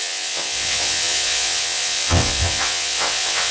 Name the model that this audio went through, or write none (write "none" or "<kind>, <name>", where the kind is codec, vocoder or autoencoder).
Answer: vocoder, WaveNeXt